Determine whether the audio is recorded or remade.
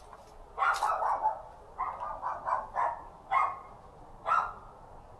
recorded